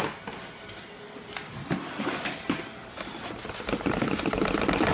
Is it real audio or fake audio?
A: real